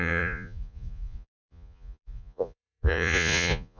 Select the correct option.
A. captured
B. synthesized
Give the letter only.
B